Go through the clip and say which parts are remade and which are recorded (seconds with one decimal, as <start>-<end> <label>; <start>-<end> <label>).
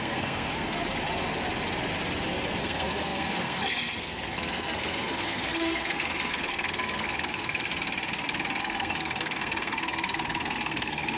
0.0-0.8 remade; 0.8-2.6 recorded; 2.6-7.7 remade; 7.7-8.6 recorded; 8.6-11.2 remade